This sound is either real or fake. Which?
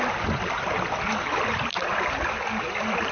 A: real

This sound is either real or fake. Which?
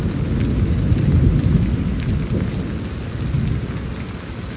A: real